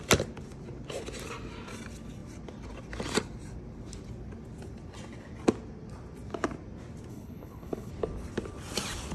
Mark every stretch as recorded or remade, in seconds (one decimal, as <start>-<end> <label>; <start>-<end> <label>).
0.0-7.1 recorded; 7.1-7.9 remade; 7.9-9.1 recorded

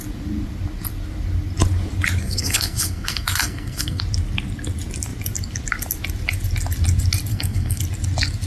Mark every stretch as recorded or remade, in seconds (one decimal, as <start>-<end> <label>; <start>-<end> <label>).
0.0-2.2 recorded; 2.2-4.0 remade; 4.0-7.3 recorded; 7.3-7.8 remade; 7.8-8.5 recorded

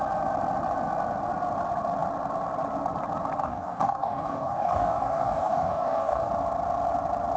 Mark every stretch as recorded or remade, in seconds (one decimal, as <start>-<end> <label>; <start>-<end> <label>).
0.0-3.4 recorded; 3.4-6.3 remade; 6.3-7.4 recorded